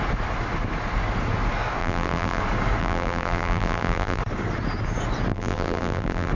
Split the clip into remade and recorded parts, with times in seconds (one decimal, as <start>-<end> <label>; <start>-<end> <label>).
0.0-1.8 recorded; 1.8-2.4 remade; 2.4-2.8 recorded; 2.8-4.2 remade; 4.2-5.3 recorded; 5.3-6.3 remade